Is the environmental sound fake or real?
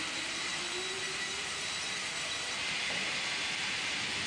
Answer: fake